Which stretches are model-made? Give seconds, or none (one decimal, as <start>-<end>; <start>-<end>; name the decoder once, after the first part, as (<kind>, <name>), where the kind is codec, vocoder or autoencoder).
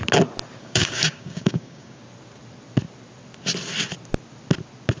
0.6-2.0 (codec, DAC)